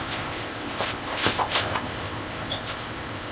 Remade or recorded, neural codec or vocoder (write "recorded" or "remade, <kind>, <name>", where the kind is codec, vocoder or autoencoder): remade, codec, ZipCodec